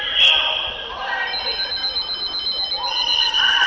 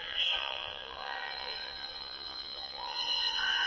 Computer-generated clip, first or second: second